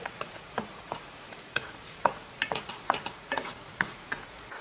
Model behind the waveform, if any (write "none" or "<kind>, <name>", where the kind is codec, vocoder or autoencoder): vocoder, Vocos